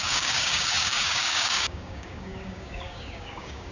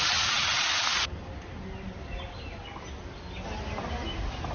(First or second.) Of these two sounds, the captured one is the second